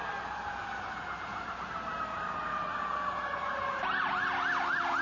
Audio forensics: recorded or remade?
recorded